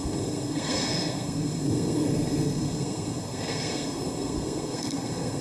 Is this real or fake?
fake